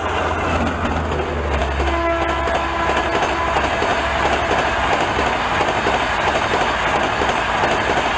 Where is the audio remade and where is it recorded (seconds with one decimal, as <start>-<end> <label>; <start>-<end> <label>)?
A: 0.0-8.2 recorded